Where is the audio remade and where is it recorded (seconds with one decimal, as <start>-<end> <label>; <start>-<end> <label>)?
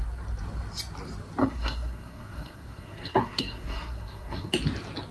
0.0-1.4 recorded; 1.4-4.5 remade; 4.5-5.1 recorded